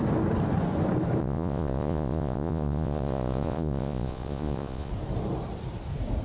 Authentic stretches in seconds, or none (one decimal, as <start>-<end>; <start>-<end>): 0.0-1.2; 4.9-6.2